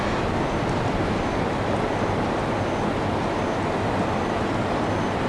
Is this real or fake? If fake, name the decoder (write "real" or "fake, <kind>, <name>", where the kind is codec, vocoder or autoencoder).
real